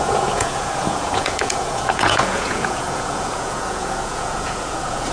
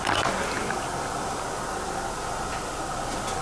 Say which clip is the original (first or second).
second